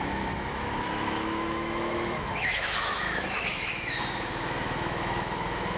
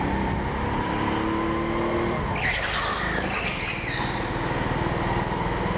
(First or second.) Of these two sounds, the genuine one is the second